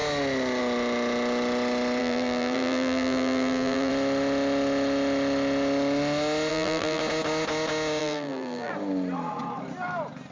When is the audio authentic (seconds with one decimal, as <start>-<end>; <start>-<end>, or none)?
0.0-2.0; 3.9-6.5; 7.0-8.0; 8.7-10.3